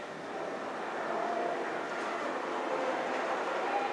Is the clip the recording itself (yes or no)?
yes